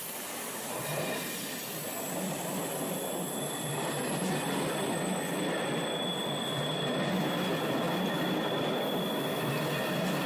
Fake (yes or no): no